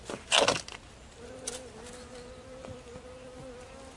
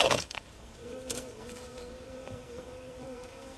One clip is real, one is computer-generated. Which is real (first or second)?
first